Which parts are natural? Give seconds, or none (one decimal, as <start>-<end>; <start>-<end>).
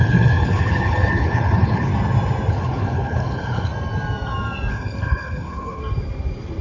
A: 1.9-2.5; 3.7-4.7; 5.8-6.6